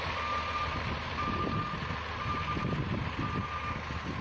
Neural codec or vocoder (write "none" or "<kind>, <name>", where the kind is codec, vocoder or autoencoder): none